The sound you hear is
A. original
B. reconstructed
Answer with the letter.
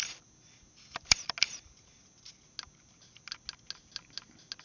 A